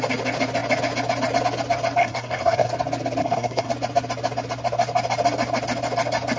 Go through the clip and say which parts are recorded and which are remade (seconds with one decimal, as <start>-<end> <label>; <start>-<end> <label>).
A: 0.0-2.0 recorded; 2.0-2.7 remade; 2.7-3.2 recorded; 3.2-3.7 remade; 3.7-6.4 recorded